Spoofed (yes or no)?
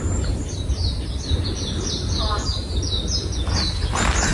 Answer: no